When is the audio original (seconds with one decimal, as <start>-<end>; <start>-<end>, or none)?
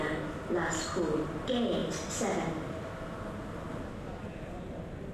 0.0-5.1